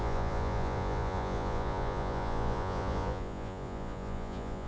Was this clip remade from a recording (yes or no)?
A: yes